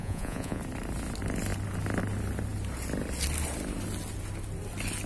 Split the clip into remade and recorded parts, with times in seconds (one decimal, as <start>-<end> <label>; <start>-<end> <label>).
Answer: 0.0-0.6 remade; 0.6-5.1 recorded